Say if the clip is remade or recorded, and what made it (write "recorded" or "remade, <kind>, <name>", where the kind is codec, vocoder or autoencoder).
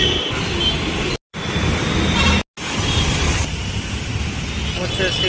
recorded